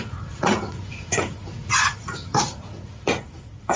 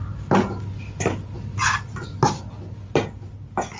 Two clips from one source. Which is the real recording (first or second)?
second